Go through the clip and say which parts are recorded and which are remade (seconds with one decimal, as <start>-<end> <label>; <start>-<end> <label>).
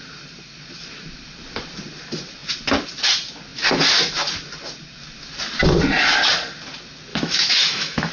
0.0-7.1 recorded; 7.1-8.1 remade